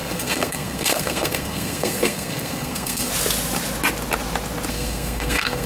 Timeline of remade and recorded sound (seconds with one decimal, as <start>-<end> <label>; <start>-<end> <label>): 0.0-3.1 remade; 3.1-4.7 recorded; 4.7-5.7 remade